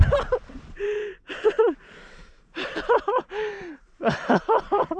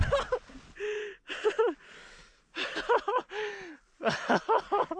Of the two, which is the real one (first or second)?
second